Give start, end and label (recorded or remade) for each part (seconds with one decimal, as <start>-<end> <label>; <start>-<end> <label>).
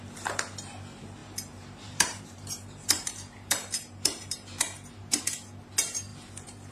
0.0-1.2 recorded; 1.2-5.2 remade; 5.2-6.7 recorded